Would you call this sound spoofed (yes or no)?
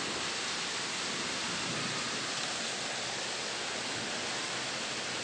no